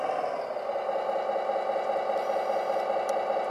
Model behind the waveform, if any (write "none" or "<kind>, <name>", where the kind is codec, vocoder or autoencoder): none